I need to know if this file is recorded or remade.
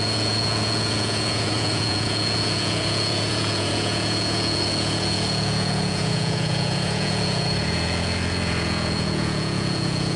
remade